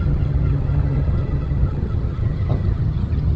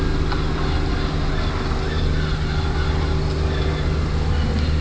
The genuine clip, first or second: second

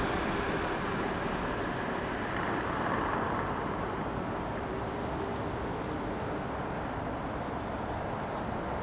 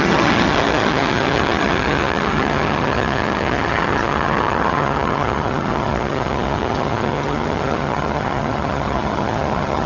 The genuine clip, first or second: first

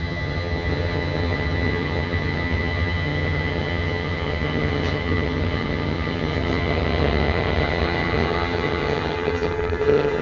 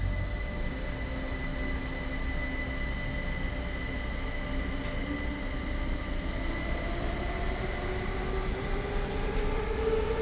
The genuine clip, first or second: second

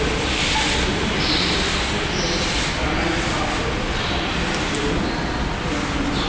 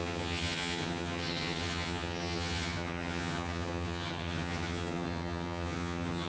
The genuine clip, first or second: first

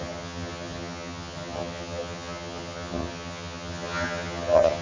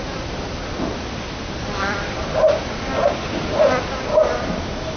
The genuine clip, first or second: second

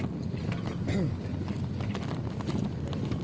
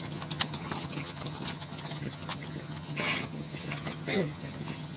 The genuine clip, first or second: first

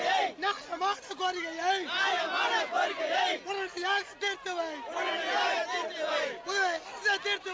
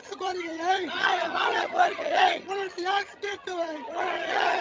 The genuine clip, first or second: first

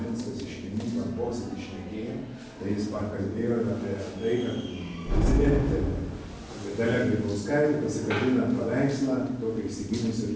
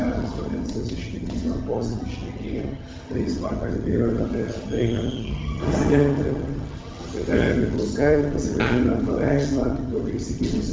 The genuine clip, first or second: first